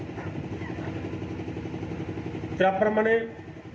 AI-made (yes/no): no